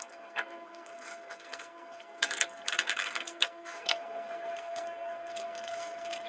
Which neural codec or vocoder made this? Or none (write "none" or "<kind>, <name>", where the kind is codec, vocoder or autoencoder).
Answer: codec, SNAC